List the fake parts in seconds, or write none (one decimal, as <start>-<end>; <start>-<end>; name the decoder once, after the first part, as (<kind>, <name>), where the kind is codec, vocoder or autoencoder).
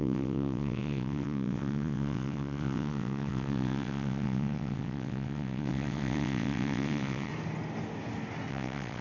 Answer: 0.0-7.3 (vocoder, WaveNeXt); 8.5-9.0